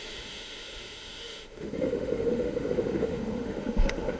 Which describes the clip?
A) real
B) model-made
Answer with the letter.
B